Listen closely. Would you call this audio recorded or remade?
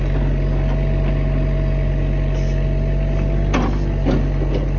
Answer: recorded